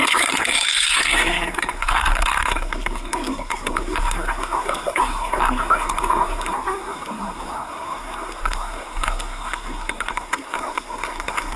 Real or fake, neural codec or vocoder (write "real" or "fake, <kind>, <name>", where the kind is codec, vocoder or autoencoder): fake, codec, SNAC